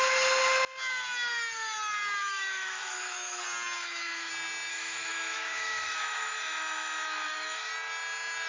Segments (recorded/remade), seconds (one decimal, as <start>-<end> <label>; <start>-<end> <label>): 0.0-2.2 recorded; 2.2-3.4 remade; 3.4-3.8 recorded; 3.8-4.3 remade; 4.3-4.7 recorded; 4.7-7.7 remade; 7.7-8.5 recorded